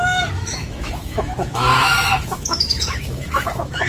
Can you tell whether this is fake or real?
fake